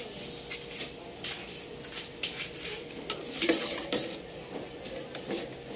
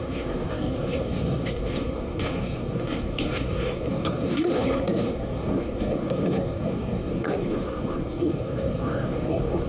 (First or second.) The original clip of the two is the first